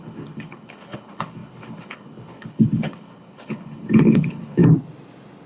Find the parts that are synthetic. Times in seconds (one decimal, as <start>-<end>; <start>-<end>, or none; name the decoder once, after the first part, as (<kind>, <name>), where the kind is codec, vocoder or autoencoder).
0.0-4.6 (codec, HILCodec)